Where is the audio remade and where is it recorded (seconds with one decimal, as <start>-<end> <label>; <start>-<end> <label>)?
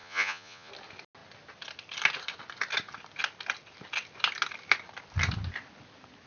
0.0-0.7 remade; 0.7-6.3 recorded